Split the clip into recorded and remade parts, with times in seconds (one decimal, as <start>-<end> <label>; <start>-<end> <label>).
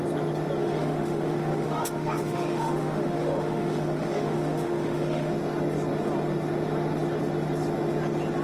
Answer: 0.0-0.6 recorded; 0.6-5.3 remade; 5.3-8.4 recorded